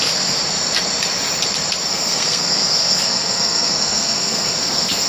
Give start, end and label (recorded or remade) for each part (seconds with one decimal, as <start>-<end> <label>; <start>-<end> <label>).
0.0-1.9 recorded; 1.9-5.1 remade